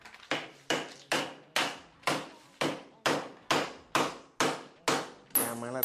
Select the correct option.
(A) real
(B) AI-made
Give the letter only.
A